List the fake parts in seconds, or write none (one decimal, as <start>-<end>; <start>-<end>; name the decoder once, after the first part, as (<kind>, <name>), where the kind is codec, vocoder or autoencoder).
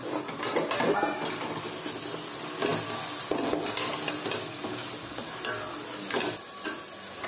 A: none